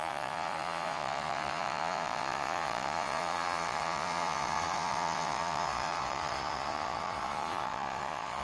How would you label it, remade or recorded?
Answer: remade